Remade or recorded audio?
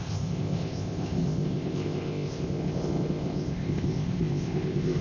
remade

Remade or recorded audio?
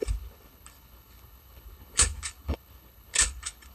remade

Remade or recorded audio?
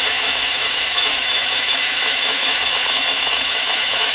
remade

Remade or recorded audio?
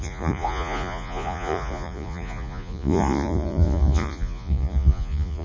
remade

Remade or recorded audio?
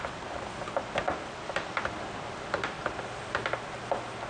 recorded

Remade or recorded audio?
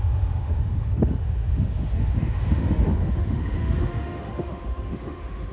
remade